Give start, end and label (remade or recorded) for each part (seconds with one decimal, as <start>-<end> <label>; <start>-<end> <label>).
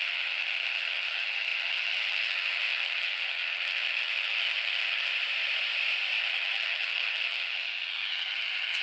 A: 0.0-5.1 remade; 5.1-6.2 recorded; 6.2-8.8 remade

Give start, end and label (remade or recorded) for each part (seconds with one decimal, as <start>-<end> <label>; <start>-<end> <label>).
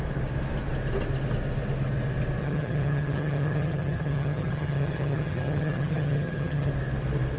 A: 0.0-2.4 recorded; 2.4-6.7 remade; 6.7-7.4 recorded